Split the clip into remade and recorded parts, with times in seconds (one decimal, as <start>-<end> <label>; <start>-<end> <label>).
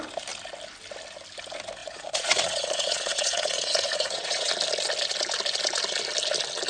0.0-1.8 recorded; 1.8-4.5 remade; 4.5-6.7 recorded